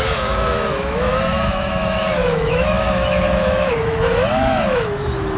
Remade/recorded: remade